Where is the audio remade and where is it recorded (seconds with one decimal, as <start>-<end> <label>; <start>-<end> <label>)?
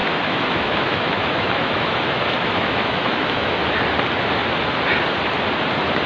0.0-3.6 remade; 3.6-6.1 recorded